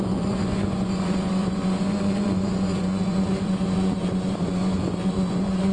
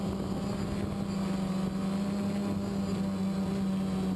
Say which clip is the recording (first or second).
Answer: second